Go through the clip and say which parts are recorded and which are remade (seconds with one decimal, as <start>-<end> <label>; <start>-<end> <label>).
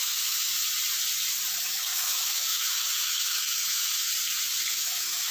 0.0-0.5 remade; 0.5-1.5 recorded; 1.5-4.1 remade; 4.1-4.7 recorded; 4.7-5.3 remade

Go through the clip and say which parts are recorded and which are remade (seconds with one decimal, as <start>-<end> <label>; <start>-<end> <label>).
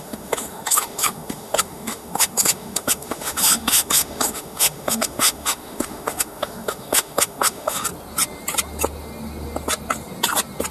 0.0-7.9 remade; 7.9-10.7 recorded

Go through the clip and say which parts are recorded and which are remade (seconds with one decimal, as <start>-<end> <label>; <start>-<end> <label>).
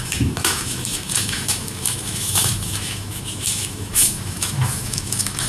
0.0-5.5 remade